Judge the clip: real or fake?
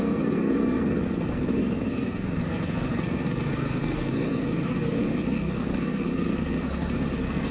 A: fake